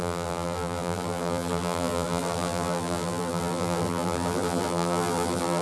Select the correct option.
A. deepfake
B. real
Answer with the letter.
A